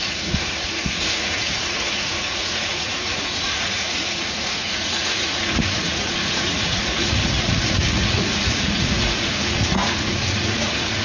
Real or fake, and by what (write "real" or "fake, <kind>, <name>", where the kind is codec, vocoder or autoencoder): fake, vocoder, Vocos